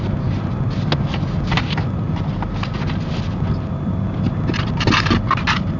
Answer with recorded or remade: recorded